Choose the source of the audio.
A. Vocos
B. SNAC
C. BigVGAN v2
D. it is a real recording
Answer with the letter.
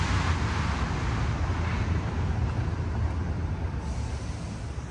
D